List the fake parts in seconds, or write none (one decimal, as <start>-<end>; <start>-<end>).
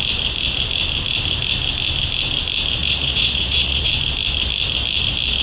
2.8-3.9